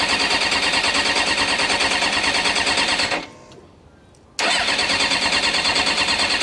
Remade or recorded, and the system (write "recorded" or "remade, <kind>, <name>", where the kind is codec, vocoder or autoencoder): recorded